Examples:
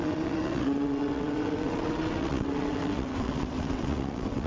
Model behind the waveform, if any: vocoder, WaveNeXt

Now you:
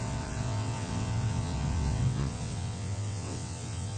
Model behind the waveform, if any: vocoder, WaveNeXt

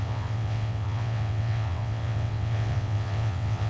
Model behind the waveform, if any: vocoder, WaveNeXt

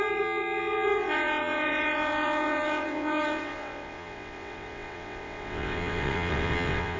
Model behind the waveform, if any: vocoder, WaveNeXt